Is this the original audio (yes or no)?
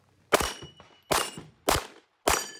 yes